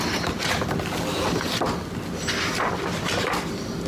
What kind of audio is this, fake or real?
real